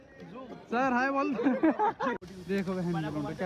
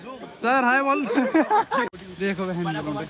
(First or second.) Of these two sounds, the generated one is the second